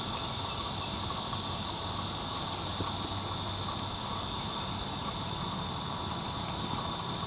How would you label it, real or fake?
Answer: real